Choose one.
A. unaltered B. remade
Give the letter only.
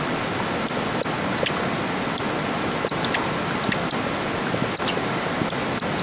A